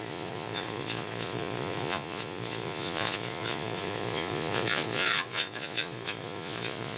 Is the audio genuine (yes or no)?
no